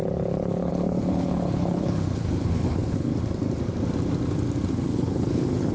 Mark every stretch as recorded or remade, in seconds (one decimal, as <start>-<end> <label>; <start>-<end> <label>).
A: 0.0-3.1 remade; 3.1-4.7 recorded; 4.7-5.7 remade